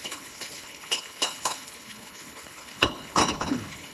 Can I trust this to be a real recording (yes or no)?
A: no